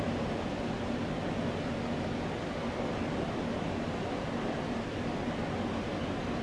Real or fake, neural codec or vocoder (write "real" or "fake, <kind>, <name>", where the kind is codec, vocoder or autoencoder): real